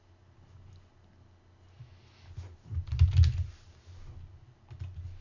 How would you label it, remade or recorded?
recorded